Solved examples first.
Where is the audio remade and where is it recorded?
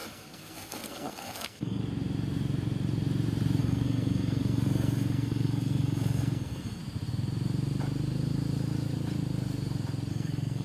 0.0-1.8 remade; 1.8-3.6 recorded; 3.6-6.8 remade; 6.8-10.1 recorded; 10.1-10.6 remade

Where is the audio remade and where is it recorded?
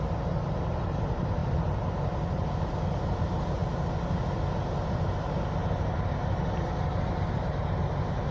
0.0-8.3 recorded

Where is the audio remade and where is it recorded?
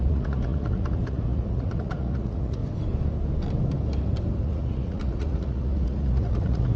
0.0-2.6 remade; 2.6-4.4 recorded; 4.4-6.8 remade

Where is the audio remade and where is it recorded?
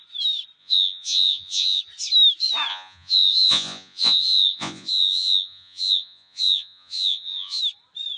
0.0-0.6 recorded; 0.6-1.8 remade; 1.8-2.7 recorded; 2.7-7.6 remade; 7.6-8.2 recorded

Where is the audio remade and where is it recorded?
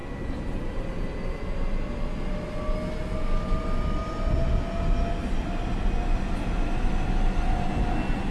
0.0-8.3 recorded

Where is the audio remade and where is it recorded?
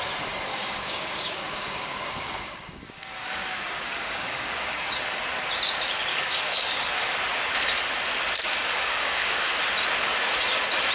0.0-0.5 recorded; 0.5-4.9 remade; 4.9-6.1 recorded; 6.1-6.9 remade; 6.9-8.5 recorded; 8.5-9.6 remade; 9.6-10.9 recorded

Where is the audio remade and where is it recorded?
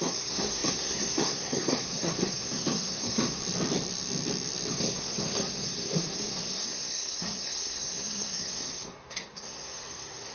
0.0-3.4 remade; 3.4-4.7 recorded; 4.7-10.3 remade